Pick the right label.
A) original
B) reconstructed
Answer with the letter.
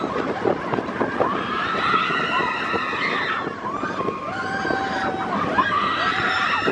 A